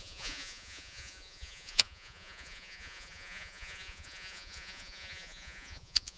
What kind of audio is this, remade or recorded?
remade